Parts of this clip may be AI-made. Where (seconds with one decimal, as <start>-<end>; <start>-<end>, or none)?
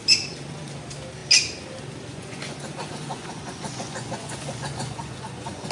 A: 2.1-5.7